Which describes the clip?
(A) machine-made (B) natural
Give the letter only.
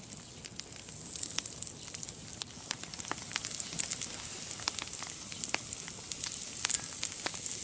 B